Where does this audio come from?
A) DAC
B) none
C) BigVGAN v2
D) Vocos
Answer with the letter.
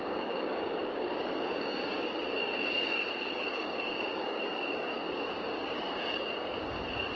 A